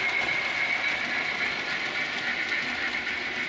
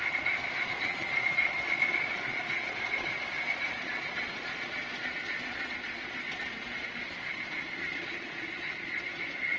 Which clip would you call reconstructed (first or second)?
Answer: second